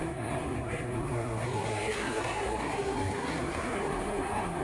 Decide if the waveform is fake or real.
fake